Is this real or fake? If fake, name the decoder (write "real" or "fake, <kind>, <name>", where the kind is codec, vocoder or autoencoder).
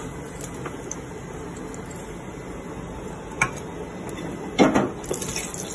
real